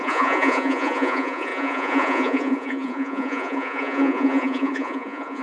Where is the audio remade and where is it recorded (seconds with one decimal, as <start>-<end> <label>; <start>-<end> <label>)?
0.0-5.4 remade